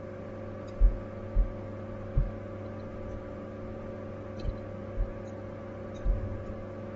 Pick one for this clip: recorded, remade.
recorded